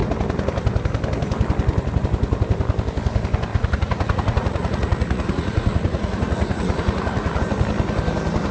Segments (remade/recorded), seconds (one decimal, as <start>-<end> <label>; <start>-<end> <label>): 0.0-3.5 recorded; 3.5-7.4 remade; 7.4-8.5 recorded